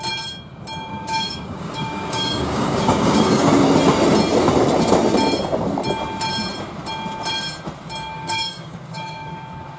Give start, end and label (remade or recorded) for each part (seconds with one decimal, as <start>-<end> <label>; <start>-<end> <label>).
0.0-0.9 recorded; 0.9-3.5 remade; 3.5-8.1 recorded; 8.1-9.3 remade; 9.3-9.8 recorded